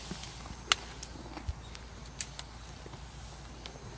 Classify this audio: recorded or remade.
recorded